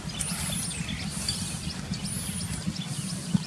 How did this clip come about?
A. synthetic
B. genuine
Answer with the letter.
B